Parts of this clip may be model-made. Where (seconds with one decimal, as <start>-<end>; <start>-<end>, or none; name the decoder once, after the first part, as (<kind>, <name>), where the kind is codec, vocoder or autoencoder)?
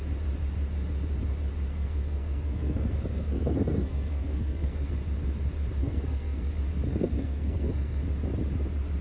1.7-4.9 (codec, SNAC); 5.8-6.5; 6.9-8.0